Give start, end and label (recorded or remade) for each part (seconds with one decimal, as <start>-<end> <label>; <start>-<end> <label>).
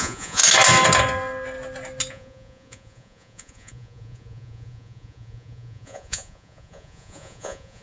0.0-0.4 remade; 0.4-2.1 recorded; 2.1-7.8 remade